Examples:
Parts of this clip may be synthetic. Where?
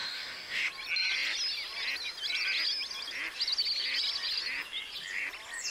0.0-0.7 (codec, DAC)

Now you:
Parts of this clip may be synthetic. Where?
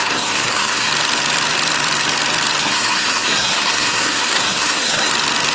0.0-0.9 (codec, SNAC); 2.6-5.1